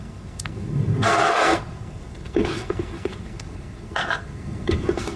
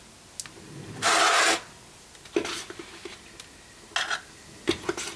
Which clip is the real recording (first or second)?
second